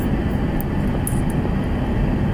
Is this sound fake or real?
real